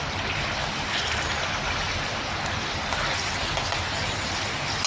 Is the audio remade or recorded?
recorded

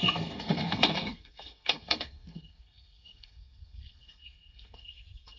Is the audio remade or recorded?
remade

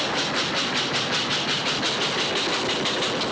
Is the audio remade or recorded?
recorded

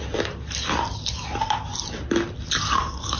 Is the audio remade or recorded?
recorded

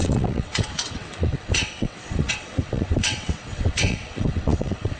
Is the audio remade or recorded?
remade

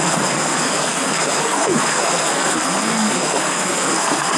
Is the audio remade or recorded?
remade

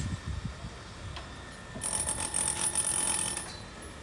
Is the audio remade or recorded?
recorded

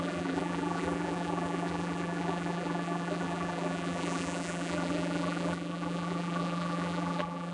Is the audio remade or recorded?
remade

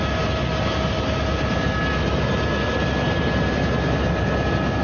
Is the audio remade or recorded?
recorded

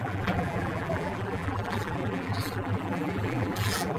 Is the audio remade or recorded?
remade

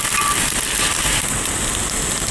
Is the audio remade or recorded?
recorded